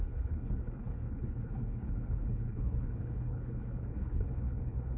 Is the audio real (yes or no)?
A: no